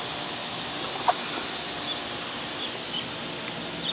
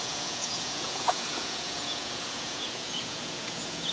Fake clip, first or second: second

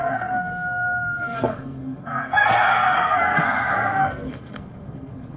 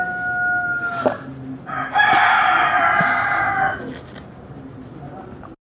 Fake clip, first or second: first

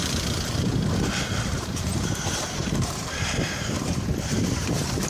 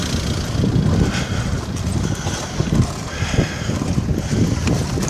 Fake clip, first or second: first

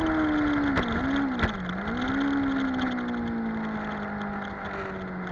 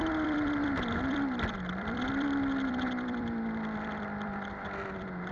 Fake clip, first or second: second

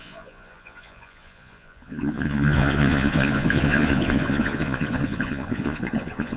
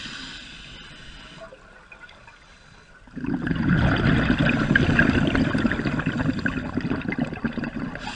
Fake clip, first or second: first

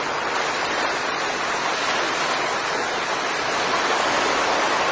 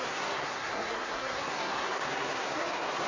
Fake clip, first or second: second